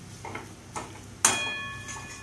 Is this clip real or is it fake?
real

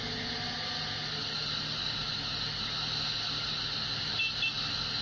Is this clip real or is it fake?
real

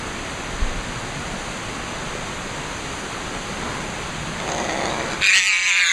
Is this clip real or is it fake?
real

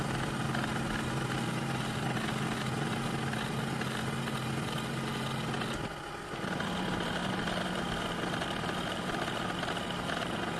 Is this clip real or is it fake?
real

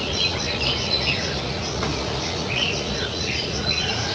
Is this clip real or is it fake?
fake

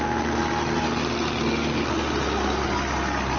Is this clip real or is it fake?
real